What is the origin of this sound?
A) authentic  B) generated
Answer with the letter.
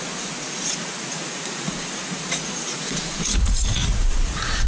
B